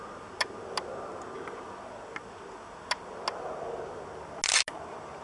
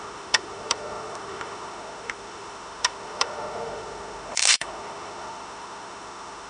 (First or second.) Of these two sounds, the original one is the first